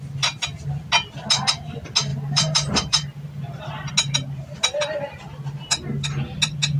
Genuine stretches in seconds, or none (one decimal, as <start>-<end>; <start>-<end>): 0.0-2.1; 3.9-6.8

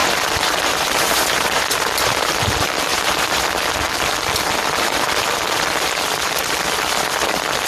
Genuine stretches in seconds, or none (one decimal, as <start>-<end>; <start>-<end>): 2.3-2.9; 3.4-7.7

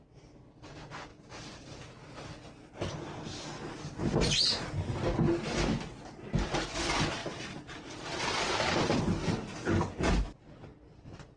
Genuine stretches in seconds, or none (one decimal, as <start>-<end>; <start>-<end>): 0.0-1.1; 1.8-7.2; 9.0-11.4

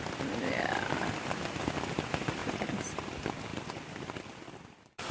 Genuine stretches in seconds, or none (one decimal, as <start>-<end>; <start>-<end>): 0.0-2.4; 3.0-3.5